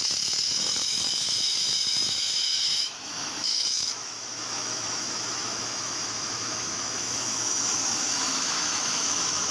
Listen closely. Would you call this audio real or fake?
fake